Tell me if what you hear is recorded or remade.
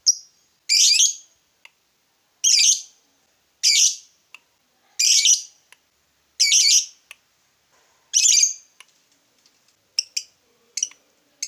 recorded